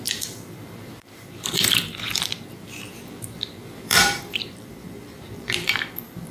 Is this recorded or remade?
remade